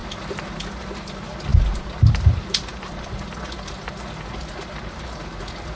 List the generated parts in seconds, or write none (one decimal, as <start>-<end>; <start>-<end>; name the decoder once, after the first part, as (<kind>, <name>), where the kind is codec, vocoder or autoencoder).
none